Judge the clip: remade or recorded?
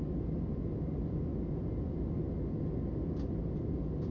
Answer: recorded